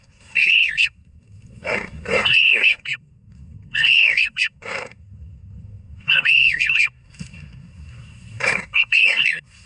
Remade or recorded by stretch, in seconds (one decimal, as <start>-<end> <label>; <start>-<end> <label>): 0.0-9.7 remade